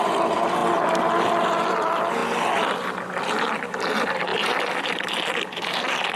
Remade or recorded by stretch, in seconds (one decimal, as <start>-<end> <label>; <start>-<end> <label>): 0.0-0.6 remade; 0.6-1.3 recorded; 1.3-2.2 remade; 2.2-3.4 recorded; 3.4-6.2 remade